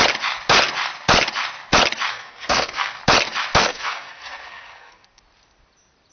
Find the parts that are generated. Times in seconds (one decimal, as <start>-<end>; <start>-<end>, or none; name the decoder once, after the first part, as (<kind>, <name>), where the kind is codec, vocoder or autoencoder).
2.1-3.0 (codec, SNAC); 3.6-5.2